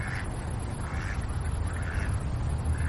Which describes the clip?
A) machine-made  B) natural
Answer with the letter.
B